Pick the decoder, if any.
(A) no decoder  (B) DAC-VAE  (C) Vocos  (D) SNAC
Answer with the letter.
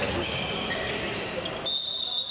A